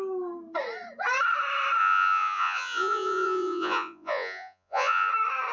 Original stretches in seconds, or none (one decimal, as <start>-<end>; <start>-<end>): 0.0-1.8; 5.1-5.5

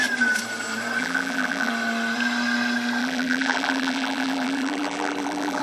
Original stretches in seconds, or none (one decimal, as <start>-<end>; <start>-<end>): 0.0-1.0; 1.7-3.0

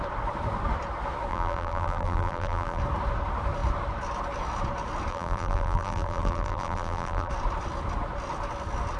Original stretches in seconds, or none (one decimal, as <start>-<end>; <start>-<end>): 0.0-1.3; 2.8-5.1; 7.3-9.0

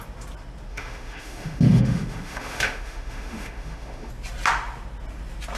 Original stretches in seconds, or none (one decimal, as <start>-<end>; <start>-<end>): 0.0-0.7; 4.1-5.6

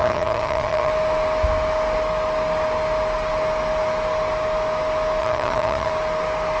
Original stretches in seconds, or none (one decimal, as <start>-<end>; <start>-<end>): 0.9-5.2; 5.9-6.6

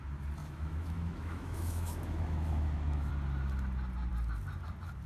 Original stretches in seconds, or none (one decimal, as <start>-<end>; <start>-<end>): 0.0-0.4; 3.1-5.1